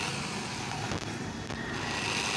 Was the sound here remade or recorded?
recorded